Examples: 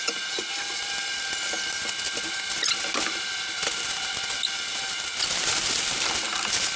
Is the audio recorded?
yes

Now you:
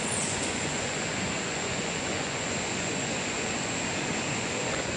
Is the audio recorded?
no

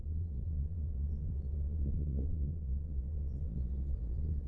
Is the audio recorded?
no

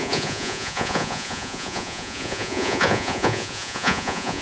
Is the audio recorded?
no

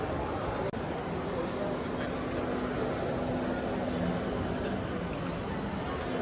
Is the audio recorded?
yes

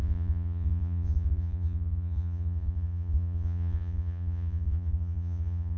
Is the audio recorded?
no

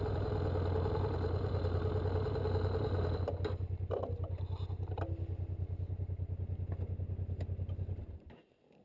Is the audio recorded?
yes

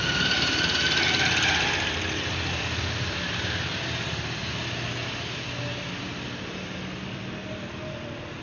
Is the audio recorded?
yes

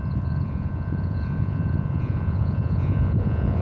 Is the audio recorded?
no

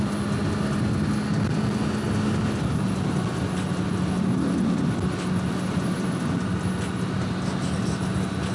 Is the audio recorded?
yes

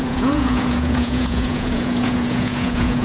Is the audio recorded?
no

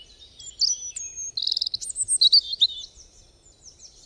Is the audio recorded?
yes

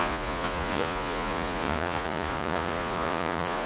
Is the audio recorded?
no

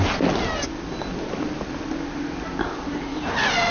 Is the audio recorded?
yes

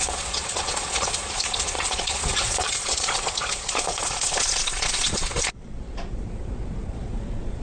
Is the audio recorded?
no